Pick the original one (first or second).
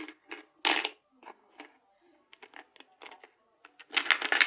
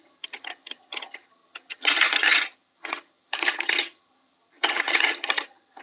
first